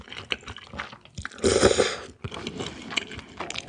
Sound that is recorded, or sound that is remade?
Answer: recorded